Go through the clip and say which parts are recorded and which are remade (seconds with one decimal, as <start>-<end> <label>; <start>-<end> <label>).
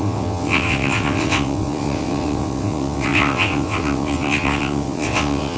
0.0-5.6 remade